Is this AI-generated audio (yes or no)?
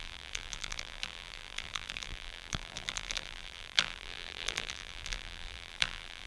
yes